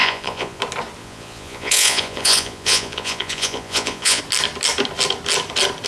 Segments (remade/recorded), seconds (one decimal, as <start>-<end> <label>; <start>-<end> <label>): 0.0-0.6 remade; 0.6-1.0 recorded; 1.0-4.2 remade; 4.2-5.9 recorded